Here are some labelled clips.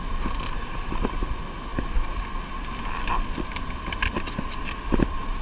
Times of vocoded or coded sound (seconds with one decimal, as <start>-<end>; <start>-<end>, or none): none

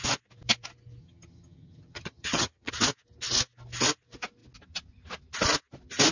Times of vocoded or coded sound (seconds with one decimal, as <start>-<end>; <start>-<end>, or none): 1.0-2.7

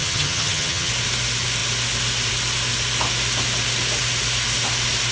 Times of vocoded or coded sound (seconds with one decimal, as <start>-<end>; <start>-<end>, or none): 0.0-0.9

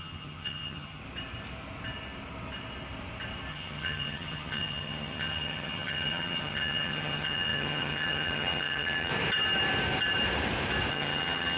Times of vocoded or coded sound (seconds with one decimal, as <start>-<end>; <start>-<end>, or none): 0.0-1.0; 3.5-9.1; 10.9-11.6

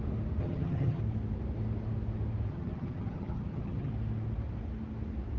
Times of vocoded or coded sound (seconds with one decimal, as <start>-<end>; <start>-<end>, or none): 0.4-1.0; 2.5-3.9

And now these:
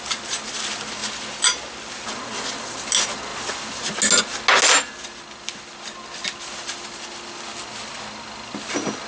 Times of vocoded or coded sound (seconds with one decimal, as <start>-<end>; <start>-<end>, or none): none

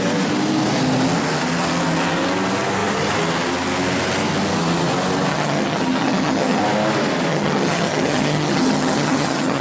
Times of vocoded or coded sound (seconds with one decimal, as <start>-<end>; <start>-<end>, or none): 5.3-6.6; 7.3-9.6